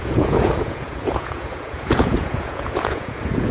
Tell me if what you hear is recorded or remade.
remade